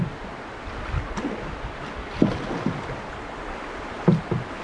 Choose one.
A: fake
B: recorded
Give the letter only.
B